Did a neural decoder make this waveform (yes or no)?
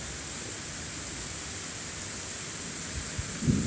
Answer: no